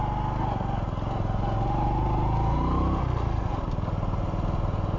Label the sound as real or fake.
real